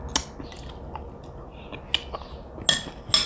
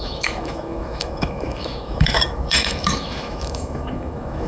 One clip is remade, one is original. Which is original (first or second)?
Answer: first